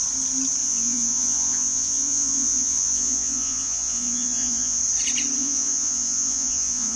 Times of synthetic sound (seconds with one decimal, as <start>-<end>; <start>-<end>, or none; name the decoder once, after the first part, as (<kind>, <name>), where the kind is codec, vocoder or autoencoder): 0.6-4.8 (vocoder, Vocos); 5.4-7.0